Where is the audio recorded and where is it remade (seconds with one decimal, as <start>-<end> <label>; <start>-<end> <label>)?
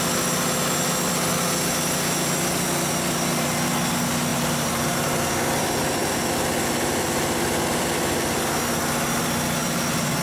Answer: 0.0-4.3 recorded; 4.3-5.3 remade; 5.3-10.2 recorded